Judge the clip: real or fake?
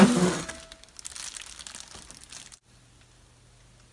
real